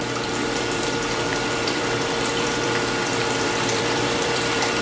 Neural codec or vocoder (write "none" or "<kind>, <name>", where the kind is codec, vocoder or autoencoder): vocoder, BigVGAN v2